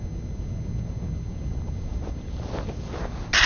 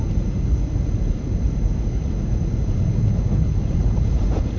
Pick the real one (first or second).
first